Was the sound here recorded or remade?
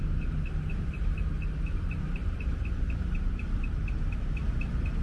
recorded